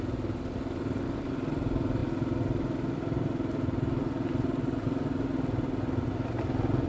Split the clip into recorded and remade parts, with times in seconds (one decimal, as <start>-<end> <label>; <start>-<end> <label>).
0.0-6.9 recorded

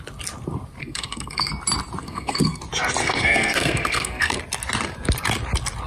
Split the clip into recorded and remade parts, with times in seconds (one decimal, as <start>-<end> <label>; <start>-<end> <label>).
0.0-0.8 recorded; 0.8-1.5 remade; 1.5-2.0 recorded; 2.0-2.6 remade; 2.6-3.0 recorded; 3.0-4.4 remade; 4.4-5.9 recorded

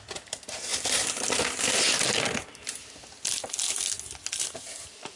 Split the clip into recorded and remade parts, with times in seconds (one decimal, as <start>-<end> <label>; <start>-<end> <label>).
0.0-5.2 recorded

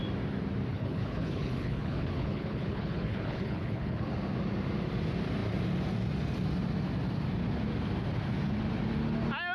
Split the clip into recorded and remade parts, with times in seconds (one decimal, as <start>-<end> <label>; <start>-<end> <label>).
0.0-0.7 recorded; 0.7-4.1 remade; 4.1-9.5 recorded

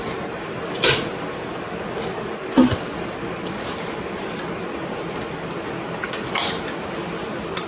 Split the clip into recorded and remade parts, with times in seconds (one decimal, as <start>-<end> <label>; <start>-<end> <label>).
0.0-7.7 recorded

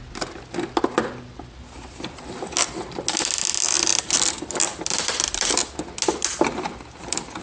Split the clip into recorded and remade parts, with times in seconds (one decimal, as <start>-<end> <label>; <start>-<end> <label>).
0.0-3.9 recorded; 3.9-5.5 remade; 5.5-7.4 recorded

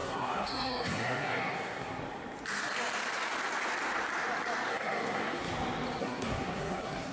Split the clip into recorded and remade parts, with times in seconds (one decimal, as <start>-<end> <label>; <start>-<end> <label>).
0.0-2.0 remade; 2.0-4.7 recorded; 4.7-5.5 remade; 5.5-6.0 recorded; 6.0-7.1 remade

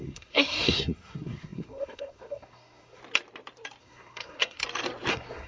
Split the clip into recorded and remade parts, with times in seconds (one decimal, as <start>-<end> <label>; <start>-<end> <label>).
0.0-3.0 remade; 3.0-3.8 recorded; 3.8-4.6 remade; 4.6-5.1 recorded; 5.1-5.5 remade